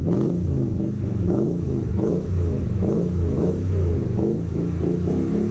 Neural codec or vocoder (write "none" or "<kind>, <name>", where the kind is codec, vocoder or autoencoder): autoencoder, DAC-VAE